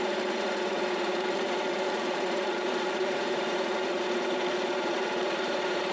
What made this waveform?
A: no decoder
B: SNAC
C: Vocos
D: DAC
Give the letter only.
C